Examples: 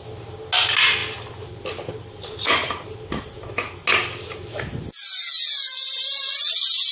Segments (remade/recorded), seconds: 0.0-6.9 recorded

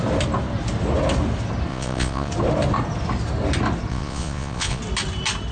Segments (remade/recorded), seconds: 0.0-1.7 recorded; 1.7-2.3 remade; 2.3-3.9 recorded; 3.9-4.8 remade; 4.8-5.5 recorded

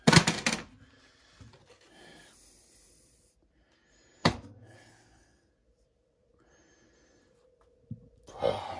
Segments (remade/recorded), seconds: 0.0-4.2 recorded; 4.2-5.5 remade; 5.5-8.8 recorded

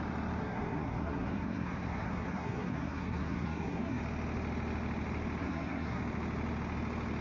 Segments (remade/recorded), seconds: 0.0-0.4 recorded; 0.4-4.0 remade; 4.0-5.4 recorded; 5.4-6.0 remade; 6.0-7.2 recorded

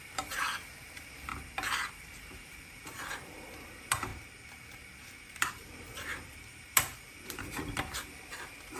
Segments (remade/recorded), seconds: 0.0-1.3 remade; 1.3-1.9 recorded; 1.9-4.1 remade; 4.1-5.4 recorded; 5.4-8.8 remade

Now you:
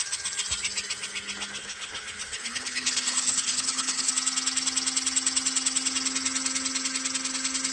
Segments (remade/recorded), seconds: 0.0-1.6 recorded; 1.6-4.1 remade; 4.1-7.7 recorded

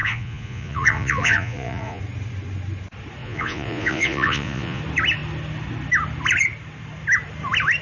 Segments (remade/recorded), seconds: 0.0-2.0 remade; 2.0-3.2 recorded; 3.2-4.8 remade; 4.8-7.8 recorded

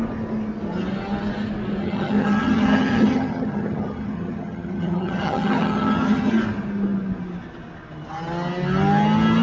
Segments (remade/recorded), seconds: 0.0-1.8 recorded; 1.8-6.3 remade; 6.3-9.4 recorded